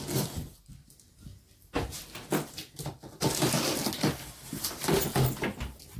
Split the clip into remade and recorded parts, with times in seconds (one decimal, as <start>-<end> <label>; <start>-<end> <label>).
0.0-6.0 recorded